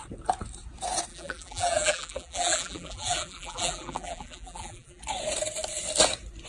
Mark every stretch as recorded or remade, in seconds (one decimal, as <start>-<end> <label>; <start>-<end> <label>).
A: 0.0-1.1 recorded; 1.1-5.0 remade; 5.0-6.5 recorded